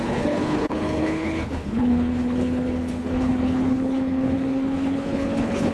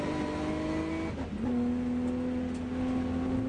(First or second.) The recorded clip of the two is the second